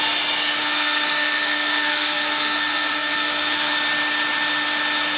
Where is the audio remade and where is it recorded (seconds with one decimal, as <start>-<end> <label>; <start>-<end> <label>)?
0.0-0.6 recorded; 0.6-3.7 remade; 3.7-5.2 recorded